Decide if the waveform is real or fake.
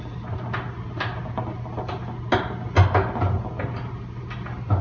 real